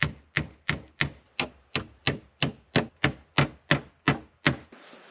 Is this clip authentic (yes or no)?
yes